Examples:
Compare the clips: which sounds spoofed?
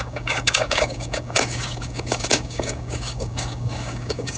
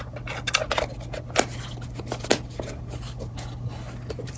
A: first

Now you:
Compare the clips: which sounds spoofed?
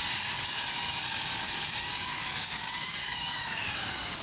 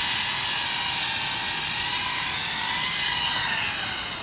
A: first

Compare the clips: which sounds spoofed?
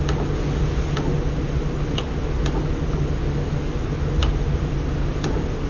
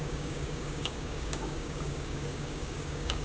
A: second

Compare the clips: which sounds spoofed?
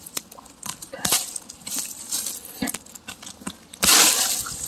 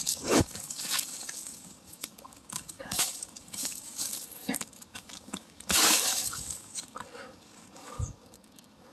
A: second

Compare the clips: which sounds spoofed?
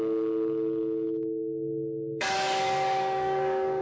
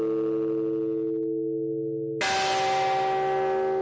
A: first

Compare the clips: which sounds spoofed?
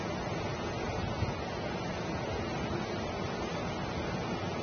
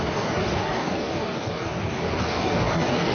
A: second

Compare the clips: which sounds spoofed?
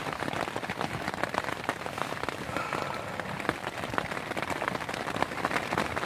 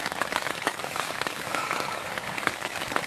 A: second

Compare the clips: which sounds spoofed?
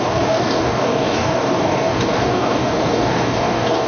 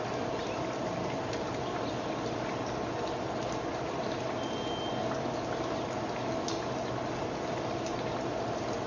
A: first